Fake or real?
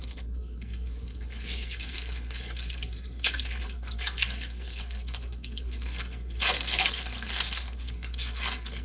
fake